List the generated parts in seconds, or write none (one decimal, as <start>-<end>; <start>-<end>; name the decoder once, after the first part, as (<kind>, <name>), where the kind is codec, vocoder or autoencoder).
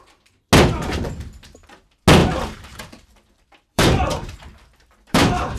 2.2-5.6 (vocoder, BigVGAN v2)